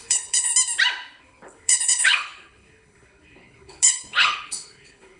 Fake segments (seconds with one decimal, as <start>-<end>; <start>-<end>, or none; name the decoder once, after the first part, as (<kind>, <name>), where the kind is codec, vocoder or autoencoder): 0.0-0.5 (codec, HILCodec); 1.2-5.2